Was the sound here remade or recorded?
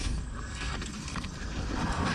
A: remade